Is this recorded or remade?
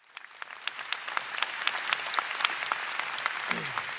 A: recorded